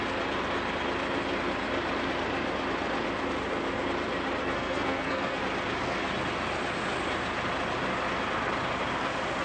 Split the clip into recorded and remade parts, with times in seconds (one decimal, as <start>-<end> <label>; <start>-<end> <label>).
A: 0.0-4.4 recorded; 4.4-5.4 remade; 5.4-9.4 recorded